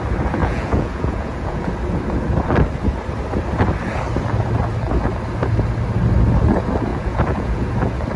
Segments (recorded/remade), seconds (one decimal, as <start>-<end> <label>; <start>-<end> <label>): 0.0-0.4 recorded; 0.4-1.7 remade; 1.7-6.9 recorded; 6.9-7.7 remade; 7.7-8.2 recorded